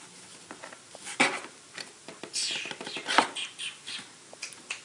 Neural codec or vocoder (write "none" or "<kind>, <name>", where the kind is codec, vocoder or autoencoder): none